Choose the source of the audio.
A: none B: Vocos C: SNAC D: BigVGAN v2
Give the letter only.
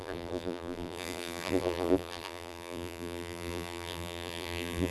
D